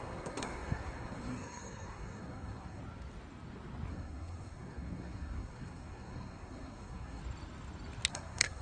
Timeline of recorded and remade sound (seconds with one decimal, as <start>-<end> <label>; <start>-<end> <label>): 0.0-2.8 remade; 2.8-3.9 recorded; 3.9-7.2 remade; 7.2-8.1 recorded; 8.1-8.6 remade